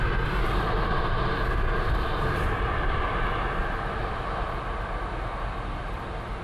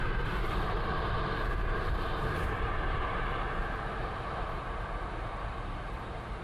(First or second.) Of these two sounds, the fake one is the second